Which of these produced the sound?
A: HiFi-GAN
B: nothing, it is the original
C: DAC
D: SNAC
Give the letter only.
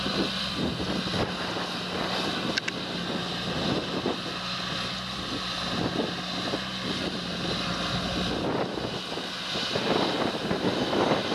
B